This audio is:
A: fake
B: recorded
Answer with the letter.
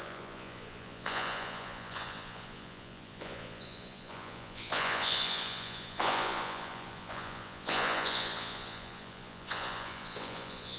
A